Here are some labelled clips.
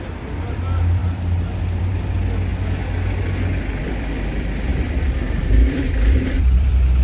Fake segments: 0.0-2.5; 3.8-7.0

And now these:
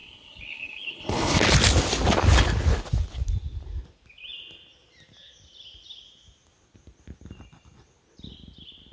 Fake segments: 0.0-1.4

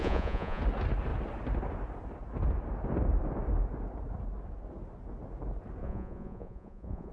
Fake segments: 0.0-0.6; 5.8-7.1

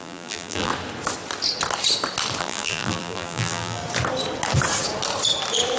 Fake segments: 0.0-0.7; 2.4-3.8

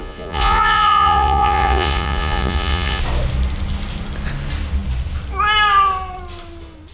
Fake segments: 0.0-3.0

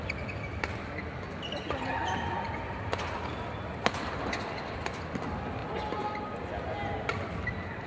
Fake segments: none

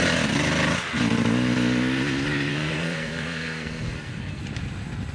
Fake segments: 2.5-4.4